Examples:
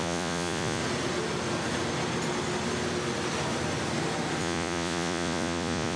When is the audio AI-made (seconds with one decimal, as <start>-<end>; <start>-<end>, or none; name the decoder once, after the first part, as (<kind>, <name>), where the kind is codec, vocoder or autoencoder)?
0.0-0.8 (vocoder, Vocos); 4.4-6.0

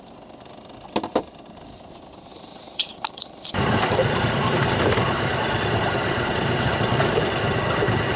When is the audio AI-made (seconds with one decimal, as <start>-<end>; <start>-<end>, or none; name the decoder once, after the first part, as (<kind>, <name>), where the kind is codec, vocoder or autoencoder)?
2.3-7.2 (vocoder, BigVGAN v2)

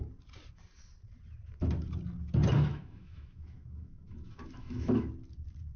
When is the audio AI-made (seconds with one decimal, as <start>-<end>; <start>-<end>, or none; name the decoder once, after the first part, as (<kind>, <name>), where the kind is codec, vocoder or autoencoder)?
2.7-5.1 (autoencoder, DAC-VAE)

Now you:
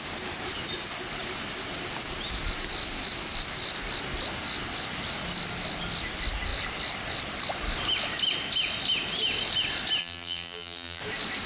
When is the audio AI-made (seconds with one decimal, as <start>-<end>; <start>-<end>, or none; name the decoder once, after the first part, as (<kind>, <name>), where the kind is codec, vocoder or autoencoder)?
10.0-11.0 (vocoder, BigVGAN v2)

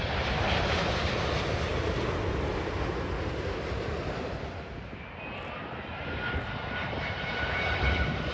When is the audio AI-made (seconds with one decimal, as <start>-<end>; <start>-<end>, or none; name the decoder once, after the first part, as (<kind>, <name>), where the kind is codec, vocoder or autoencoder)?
0.0-1.7 (vocoder, BigVGAN v2); 5.9-8.3

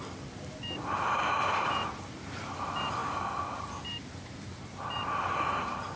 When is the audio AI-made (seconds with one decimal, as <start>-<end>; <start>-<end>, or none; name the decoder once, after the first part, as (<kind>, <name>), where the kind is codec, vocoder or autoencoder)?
none

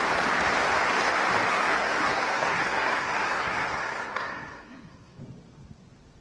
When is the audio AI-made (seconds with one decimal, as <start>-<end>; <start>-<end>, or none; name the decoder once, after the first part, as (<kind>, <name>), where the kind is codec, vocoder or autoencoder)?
1.5-5.2 (codec, SNAC)

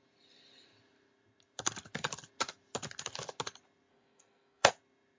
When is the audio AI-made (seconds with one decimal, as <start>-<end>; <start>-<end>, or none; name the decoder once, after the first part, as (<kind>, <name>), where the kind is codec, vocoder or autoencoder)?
3.9-4.7 (codec, SNAC)